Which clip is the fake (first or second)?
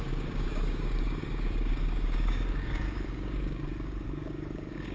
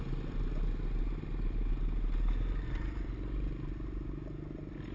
first